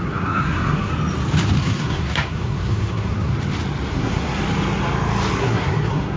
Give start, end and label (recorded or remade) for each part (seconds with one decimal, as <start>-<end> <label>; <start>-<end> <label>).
0.0-0.9 remade; 0.9-1.6 recorded; 1.6-3.3 remade; 3.3-3.9 recorded; 3.9-4.4 remade; 4.4-5.4 recorded; 5.4-6.2 remade